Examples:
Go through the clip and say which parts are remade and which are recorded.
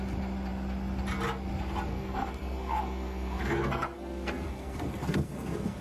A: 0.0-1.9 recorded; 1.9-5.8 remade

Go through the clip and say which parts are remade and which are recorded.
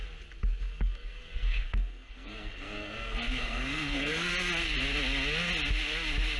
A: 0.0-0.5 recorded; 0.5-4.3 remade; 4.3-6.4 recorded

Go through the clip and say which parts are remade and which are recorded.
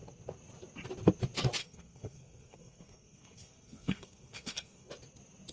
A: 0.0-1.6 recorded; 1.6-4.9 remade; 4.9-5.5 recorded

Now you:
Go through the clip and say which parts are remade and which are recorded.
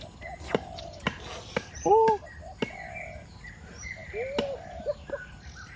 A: 0.0-5.8 recorded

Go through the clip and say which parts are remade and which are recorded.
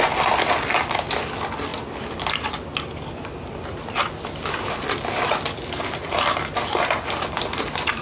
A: 0.0-8.0 recorded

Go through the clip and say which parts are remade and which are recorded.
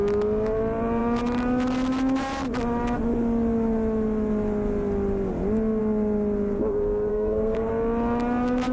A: 0.0-7.1 recorded; 7.1-7.7 remade; 7.7-8.7 recorded